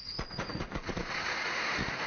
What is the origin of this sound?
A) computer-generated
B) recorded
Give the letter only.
A